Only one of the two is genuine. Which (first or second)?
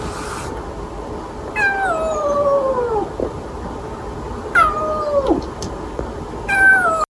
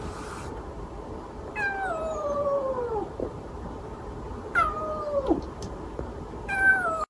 first